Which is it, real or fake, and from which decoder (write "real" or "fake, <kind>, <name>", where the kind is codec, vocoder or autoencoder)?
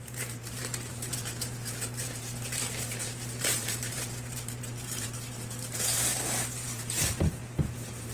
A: fake, vocoder, BigVGAN v2